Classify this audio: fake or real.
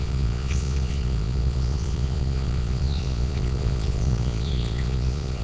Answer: fake